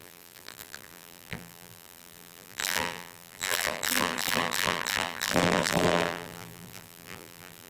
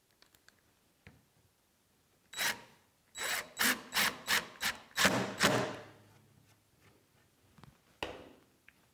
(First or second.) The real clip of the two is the second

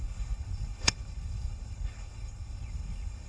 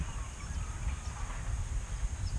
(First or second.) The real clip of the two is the second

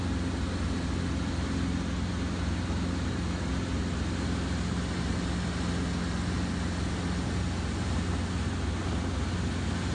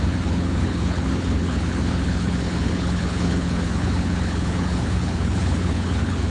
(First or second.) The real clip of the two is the first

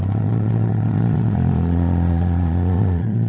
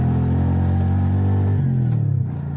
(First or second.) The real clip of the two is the second